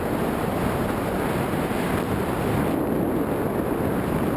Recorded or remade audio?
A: recorded